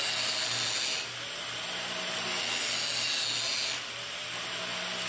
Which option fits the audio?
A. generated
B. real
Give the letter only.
B